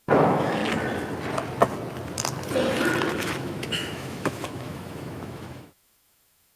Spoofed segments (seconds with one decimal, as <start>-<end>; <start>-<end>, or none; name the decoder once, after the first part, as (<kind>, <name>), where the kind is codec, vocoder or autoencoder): 0.0-0.6 (autoencoder, DAC-VAE); 3.1-6.6